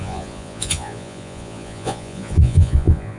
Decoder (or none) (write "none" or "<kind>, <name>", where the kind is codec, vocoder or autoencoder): vocoder, Vocos